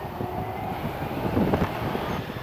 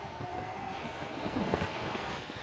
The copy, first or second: second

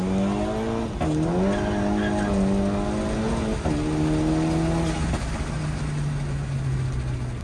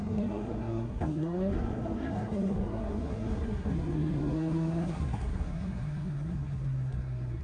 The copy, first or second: second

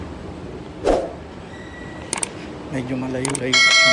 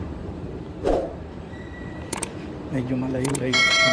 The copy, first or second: second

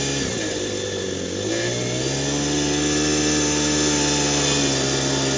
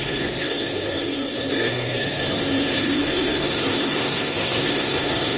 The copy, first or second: second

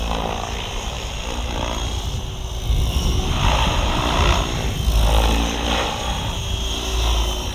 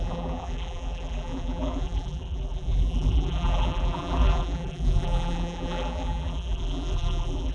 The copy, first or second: second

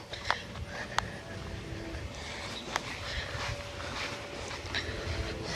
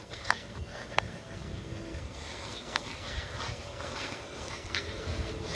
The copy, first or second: second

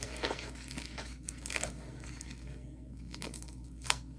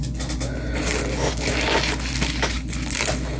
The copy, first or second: first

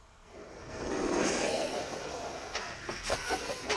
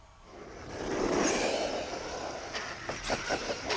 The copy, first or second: first